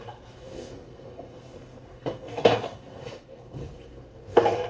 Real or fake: fake